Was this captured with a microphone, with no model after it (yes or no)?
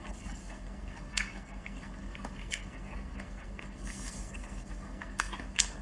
no